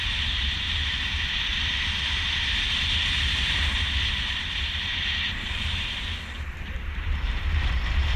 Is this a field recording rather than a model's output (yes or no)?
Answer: no